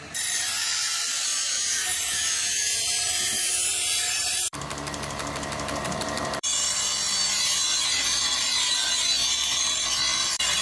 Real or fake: fake